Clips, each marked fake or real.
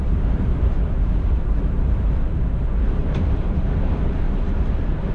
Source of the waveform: fake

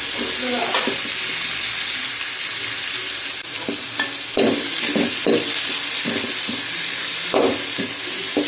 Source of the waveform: real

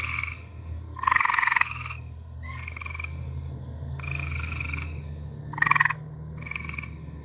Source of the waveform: fake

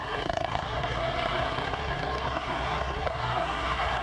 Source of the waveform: fake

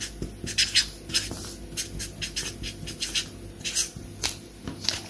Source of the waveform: real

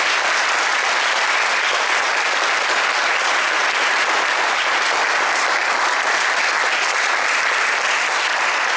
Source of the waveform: real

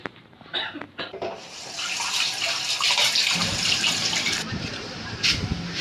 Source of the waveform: fake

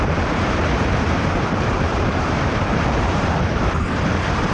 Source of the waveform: fake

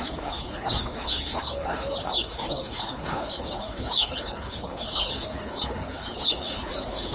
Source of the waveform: fake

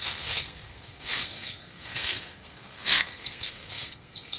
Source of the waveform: fake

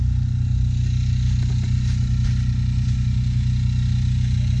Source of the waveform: real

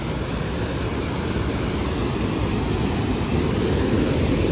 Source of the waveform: real